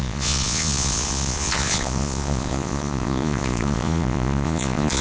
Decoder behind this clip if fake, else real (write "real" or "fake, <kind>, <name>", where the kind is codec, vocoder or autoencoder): fake, vocoder, Vocos